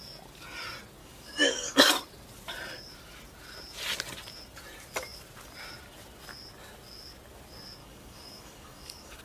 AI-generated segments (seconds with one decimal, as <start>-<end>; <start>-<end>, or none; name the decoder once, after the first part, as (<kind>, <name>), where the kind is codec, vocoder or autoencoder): 1.0-1.9 (codec, DAC); 7.8-9.2